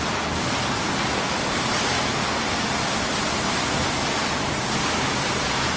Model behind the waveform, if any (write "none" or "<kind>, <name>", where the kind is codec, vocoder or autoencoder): none